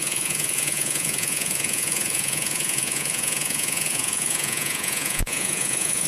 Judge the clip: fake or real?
fake